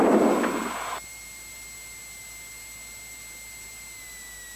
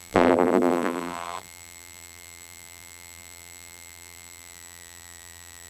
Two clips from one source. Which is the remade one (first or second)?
second